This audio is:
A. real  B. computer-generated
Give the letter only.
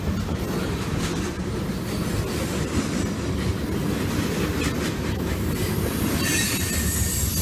A